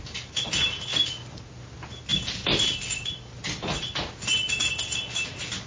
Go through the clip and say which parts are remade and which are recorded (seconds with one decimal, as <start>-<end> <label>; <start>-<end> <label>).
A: 0.0-5.7 recorded